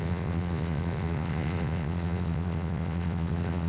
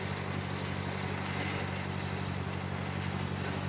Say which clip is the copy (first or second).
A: first